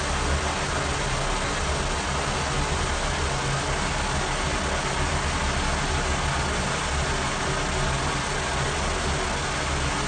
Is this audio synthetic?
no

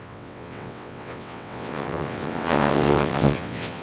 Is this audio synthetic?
yes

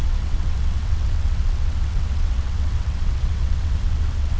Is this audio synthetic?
yes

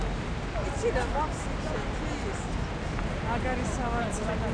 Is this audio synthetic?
no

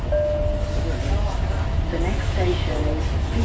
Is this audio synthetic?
no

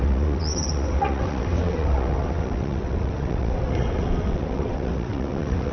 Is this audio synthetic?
yes